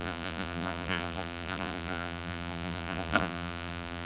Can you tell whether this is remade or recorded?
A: remade